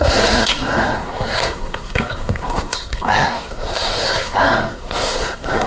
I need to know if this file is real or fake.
fake